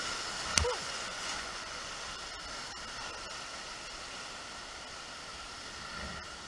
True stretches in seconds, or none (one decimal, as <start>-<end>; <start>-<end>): 0.0-0.8; 1.9-6.5